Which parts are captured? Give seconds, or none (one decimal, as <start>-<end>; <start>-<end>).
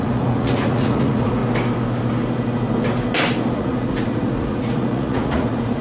1.4-3.5